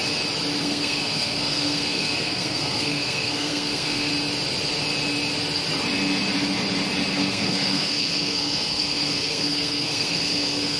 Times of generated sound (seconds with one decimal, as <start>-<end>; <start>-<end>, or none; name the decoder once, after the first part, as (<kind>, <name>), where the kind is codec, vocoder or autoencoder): 0.6-4.1 (codec, SNAC); 7.1-10.8